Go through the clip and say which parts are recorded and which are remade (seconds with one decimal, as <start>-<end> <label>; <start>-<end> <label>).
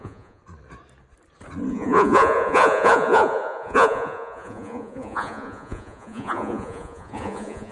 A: 0.0-0.4 remade; 0.4-1.7 recorded; 1.7-7.7 remade